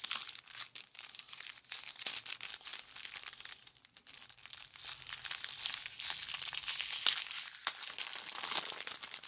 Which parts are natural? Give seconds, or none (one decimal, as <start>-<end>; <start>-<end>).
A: 0.0-9.3